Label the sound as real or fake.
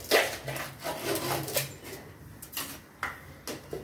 real